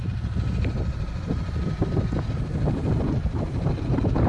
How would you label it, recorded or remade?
recorded